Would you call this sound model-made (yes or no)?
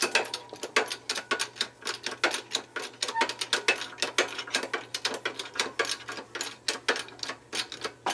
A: no